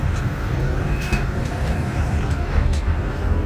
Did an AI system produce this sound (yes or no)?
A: yes